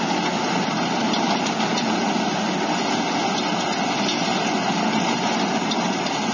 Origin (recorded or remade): recorded